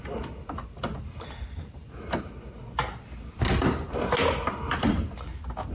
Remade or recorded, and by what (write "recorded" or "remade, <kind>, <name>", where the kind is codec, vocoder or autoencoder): recorded